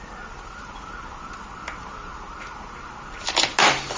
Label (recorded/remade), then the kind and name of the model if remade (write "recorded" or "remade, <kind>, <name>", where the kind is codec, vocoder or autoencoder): recorded